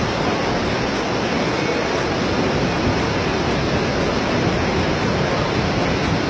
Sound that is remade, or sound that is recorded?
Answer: recorded